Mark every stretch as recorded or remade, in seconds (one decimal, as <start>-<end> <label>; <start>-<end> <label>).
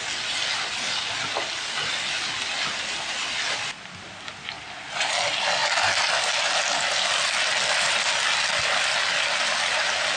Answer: 0.0-10.2 recorded